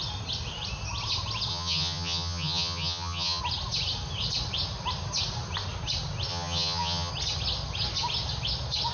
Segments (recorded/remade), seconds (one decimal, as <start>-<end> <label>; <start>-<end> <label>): 0.0-1.5 recorded; 1.5-3.4 remade; 3.4-6.3 recorded; 6.3-7.1 remade; 7.1-8.9 recorded